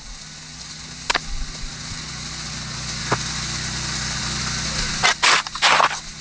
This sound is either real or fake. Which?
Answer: real